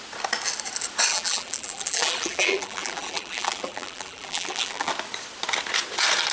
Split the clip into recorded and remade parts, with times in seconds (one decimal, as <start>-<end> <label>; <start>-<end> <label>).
0.0-1.1 recorded; 1.1-4.9 remade; 4.9-6.3 recorded